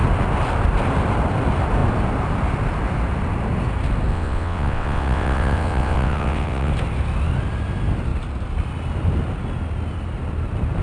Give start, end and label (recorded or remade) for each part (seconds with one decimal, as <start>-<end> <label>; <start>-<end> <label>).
0.0-4.1 recorded; 4.1-6.7 remade; 6.7-10.8 recorded